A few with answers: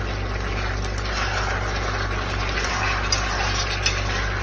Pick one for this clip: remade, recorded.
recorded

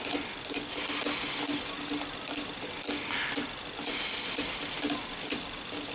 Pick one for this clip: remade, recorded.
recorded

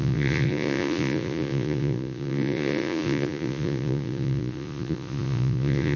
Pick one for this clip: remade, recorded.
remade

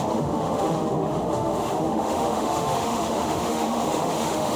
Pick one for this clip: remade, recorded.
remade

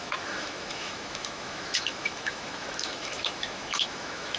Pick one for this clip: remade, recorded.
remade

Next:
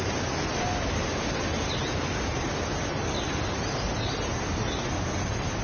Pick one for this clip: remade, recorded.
recorded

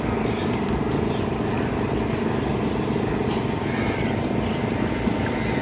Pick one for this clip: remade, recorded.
recorded